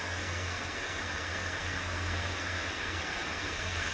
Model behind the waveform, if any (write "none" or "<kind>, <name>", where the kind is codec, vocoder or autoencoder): codec, SNAC